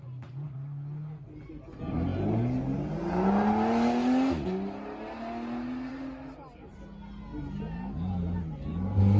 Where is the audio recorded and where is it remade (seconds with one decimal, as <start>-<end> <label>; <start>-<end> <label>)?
0.0-9.2 recorded